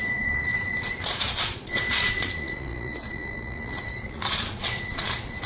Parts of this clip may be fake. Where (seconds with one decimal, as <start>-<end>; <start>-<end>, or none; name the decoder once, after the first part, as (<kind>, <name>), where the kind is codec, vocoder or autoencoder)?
0.0-5.5 (vocoder, Vocos)